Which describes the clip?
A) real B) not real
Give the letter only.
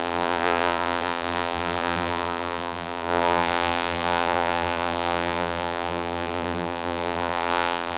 B